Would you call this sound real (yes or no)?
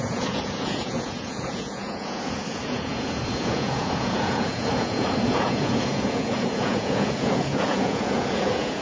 no